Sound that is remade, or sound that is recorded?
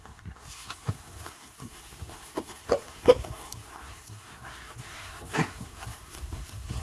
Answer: remade